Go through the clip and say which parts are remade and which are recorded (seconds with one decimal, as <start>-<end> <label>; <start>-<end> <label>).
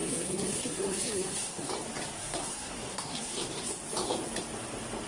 0.0-1.7 remade; 1.7-2.2 recorded; 2.2-3.5 remade; 3.5-5.1 recorded